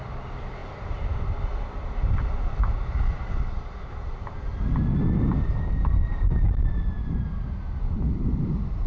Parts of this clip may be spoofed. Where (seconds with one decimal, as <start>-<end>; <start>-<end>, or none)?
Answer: none